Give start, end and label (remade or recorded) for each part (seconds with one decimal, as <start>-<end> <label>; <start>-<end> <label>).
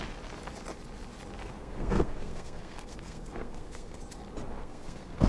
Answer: 0.0-1.4 recorded; 1.4-4.0 remade; 4.0-4.6 recorded; 4.6-5.3 remade